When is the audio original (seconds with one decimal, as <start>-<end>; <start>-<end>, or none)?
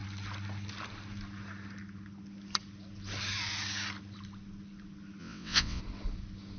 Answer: 0.0-5.2; 5.8-6.6